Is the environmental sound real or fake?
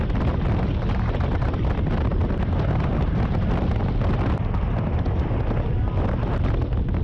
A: real